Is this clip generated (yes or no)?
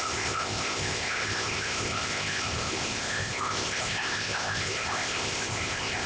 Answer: yes